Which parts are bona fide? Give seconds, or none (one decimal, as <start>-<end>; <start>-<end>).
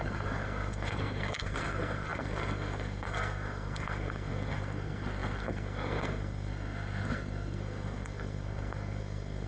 none